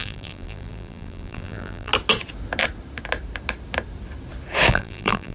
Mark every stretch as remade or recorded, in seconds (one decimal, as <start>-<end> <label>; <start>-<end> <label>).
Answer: 0.0-1.9 remade; 1.9-4.7 recorded; 4.7-5.3 remade